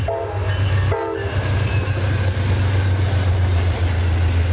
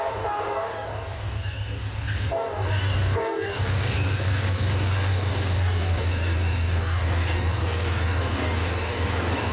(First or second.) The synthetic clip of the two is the second